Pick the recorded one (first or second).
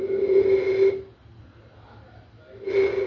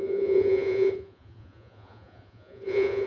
first